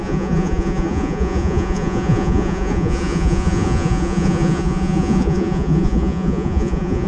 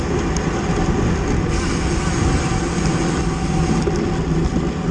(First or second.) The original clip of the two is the second